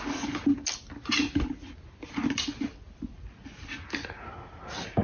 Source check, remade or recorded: recorded